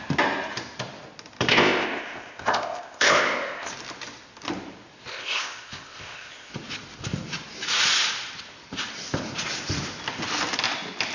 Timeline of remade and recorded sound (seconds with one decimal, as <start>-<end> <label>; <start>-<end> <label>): 0.0-1.5 recorded; 1.5-3.7 remade; 3.7-5.1 recorded; 5.1-6.5 remade; 6.5-11.1 recorded